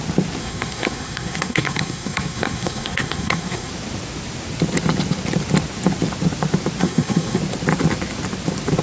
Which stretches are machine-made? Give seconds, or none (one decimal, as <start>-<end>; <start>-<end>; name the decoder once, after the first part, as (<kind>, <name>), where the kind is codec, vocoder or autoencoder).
0.4-3.7 (codec, SNAC); 6.8-7.4